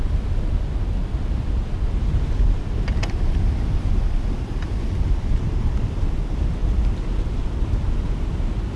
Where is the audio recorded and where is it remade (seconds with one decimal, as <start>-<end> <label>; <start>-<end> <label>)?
0.0-1.0 recorded; 1.0-6.0 remade; 6.0-6.6 recorded; 6.6-7.5 remade; 7.5-8.8 recorded